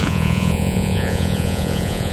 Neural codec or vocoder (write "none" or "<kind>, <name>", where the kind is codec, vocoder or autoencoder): vocoder, Vocos